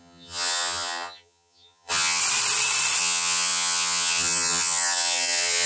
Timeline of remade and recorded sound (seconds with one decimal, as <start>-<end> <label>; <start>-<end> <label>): 0.0-2.2 remade; 2.2-3.0 recorded; 3.0-5.7 remade